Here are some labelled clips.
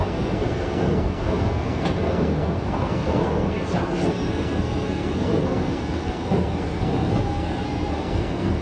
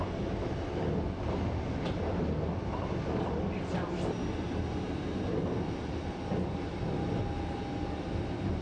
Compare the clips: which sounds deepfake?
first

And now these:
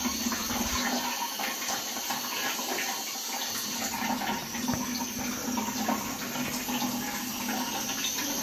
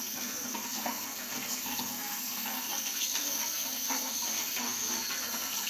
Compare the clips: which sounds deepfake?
second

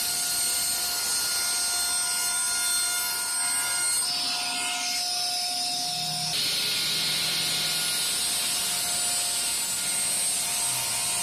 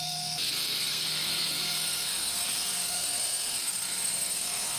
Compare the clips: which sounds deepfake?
second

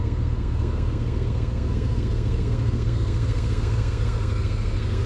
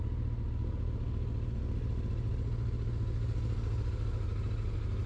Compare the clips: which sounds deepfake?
first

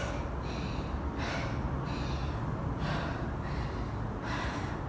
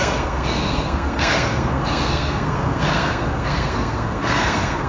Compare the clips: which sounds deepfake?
second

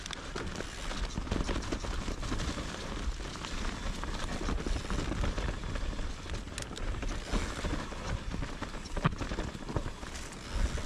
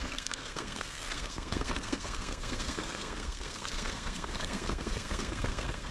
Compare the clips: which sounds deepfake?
second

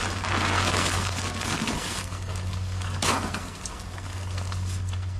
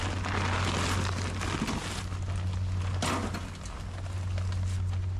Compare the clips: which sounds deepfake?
first